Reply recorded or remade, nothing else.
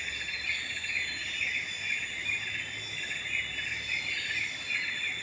recorded